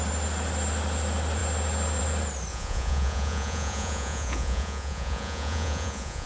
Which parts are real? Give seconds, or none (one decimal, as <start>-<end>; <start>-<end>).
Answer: 0.0-2.5